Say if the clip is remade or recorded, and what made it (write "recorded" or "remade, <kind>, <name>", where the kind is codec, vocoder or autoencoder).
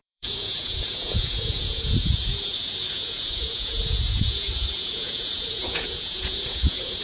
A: remade, vocoder, Vocos